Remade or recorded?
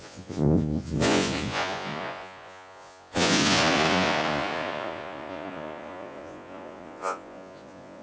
remade